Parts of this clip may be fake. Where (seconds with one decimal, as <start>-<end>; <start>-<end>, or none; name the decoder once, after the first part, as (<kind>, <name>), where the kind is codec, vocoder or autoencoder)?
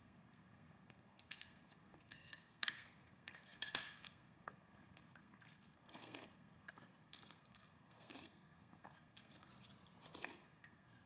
0.0-9.5 (codec, SNAC); 10.2-11.1